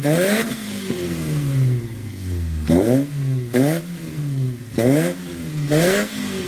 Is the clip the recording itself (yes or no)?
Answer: no